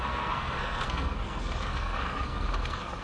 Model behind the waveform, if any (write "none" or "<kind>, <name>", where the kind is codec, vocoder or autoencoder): codec, SNAC